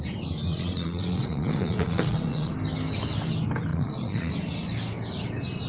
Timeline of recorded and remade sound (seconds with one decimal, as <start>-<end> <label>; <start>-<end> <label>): 0.0-0.5 recorded; 0.5-2.5 remade; 2.5-3.7 recorded; 3.7-4.3 remade; 4.3-5.7 recorded